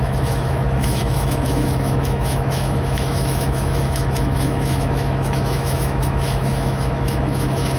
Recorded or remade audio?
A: remade